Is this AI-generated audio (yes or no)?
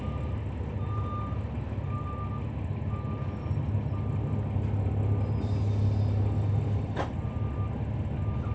no